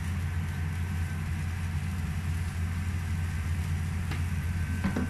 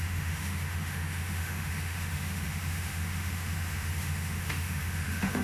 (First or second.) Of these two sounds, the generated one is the second